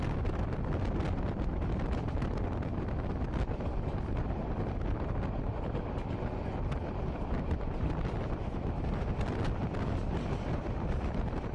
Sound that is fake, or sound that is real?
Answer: real